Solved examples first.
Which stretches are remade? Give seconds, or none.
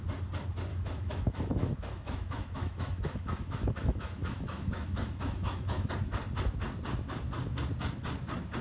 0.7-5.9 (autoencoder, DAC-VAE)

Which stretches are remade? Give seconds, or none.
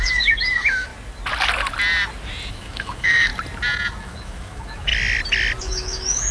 0.0-0.9 (autoencoder, DAC-VAE); 2.5-3.3; 4.0-4.9; 5.6-6.3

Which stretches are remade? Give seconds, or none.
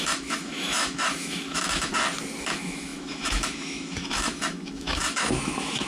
0.0-1.9 (autoencoder, DAC-VAE); 2.4-5.9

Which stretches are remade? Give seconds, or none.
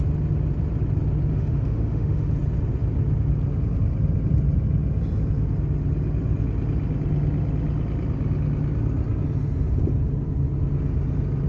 1.3-2.3 (autoencoder, DAC-VAE)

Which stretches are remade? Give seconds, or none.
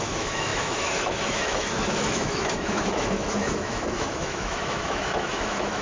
0.0-5.8 (autoencoder, DAC-VAE)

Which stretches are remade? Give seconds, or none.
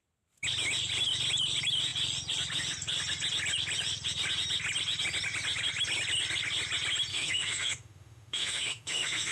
7.1-9.3 (autoencoder, DAC-VAE)